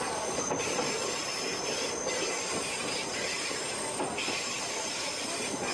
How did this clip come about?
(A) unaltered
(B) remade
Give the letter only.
A